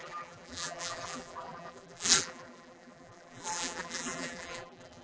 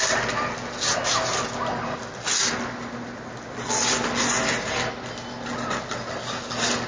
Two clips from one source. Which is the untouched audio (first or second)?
second